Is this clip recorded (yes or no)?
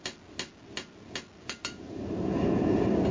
yes